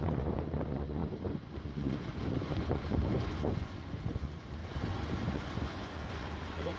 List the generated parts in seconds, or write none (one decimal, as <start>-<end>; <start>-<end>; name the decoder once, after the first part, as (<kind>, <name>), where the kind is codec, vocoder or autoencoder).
0.0-6.8 (vocoder, Vocos)

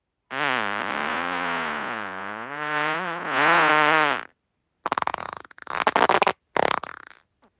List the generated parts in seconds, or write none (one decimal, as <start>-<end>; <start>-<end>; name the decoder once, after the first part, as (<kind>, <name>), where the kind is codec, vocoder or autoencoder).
1.1-3.7 (vocoder, Vocos); 5.1-5.6

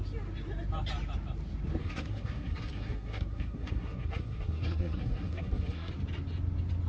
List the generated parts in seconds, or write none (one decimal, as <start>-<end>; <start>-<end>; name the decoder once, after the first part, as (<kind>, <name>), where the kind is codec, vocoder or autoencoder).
1.8-5.9 (codec, SNAC)

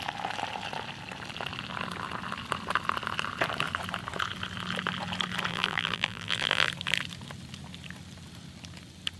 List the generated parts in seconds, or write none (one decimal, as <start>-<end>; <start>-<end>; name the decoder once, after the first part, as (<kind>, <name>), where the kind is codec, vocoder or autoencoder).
5.5-6.7 (vocoder, BigVGAN v2)

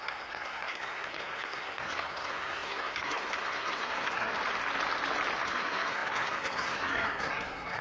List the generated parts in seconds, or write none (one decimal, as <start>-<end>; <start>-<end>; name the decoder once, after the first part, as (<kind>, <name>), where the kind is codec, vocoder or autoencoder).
0.0-4.3 (codec, SNAC); 5.4-7.8